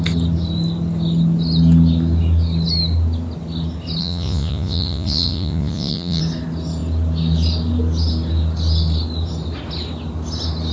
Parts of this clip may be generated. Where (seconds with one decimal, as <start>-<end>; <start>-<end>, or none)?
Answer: 4.0-6.2